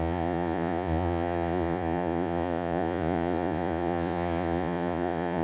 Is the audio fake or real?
fake